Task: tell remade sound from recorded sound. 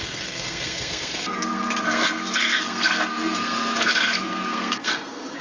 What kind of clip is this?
remade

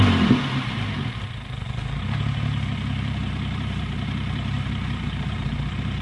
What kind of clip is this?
remade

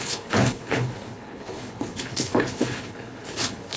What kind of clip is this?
remade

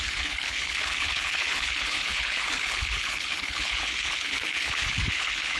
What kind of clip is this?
remade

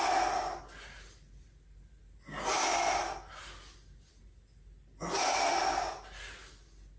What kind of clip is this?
recorded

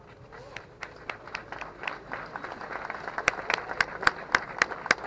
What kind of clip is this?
recorded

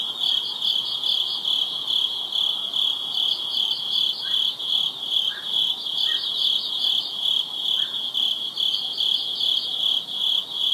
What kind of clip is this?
recorded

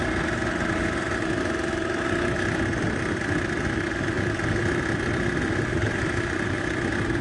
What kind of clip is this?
recorded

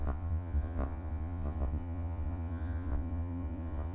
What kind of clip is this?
remade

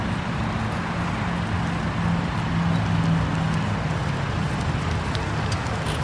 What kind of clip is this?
recorded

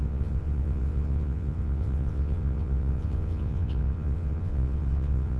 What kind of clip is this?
remade